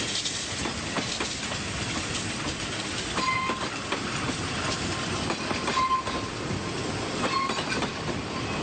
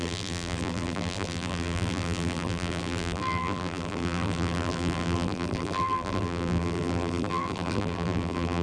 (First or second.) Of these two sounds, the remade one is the second